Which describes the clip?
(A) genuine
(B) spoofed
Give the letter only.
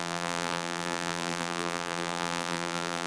B